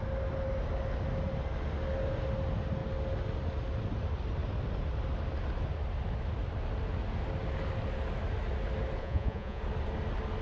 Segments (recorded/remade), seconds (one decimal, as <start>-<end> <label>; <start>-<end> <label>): 0.0-9.0 recorded; 9.0-9.6 remade; 9.6-10.4 recorded